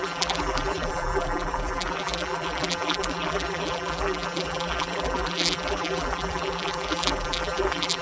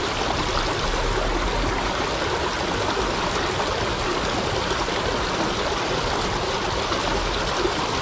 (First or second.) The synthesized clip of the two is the first